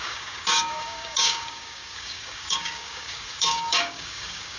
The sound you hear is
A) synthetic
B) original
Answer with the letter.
A